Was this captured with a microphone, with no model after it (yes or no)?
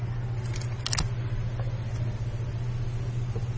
yes